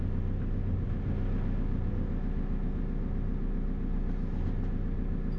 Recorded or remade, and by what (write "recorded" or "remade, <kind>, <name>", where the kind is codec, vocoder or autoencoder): recorded